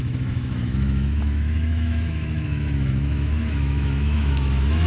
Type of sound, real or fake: fake